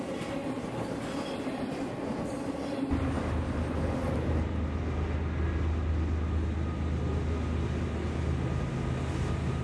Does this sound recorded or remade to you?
recorded